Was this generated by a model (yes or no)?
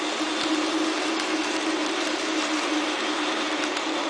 no